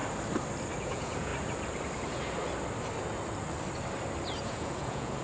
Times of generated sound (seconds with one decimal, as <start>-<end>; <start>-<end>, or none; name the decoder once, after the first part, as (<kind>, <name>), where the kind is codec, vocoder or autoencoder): 0.8-1.3 (vocoder, Vocos); 4.4-5.2